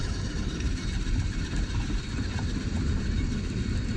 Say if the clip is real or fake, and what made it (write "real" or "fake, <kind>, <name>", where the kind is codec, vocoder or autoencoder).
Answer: real